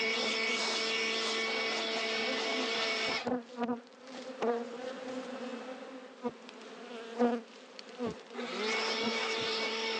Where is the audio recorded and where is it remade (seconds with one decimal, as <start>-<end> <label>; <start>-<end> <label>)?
0.0-0.6 remade; 0.6-2.0 recorded; 2.0-5.5 remade; 5.5-7.7 recorded; 7.7-10.0 remade